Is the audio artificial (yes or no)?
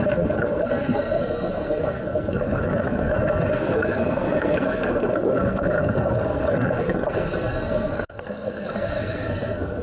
yes